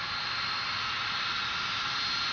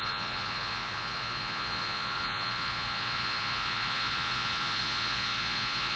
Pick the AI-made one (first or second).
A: second